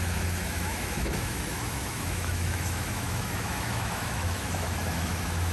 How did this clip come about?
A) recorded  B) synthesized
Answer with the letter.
B